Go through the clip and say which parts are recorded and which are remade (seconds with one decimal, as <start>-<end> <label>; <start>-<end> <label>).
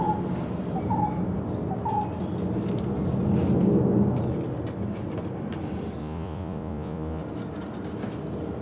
0.0-6.0 recorded; 6.0-7.2 remade; 7.2-8.6 recorded